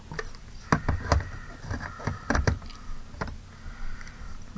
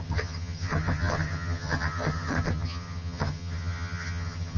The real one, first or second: first